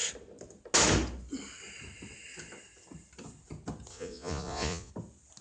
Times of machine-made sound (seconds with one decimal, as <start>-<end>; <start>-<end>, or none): 3.9-4.9